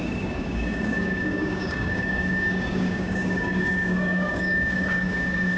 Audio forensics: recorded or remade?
remade